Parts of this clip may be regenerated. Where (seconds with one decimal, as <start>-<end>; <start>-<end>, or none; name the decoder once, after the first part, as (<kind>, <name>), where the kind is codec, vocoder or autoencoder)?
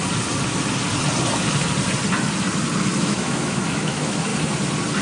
3.0-4.3 (autoencoder, DAC-VAE)